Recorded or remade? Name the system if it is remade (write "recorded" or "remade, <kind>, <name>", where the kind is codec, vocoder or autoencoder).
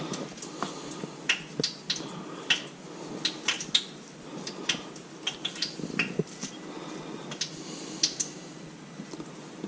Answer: recorded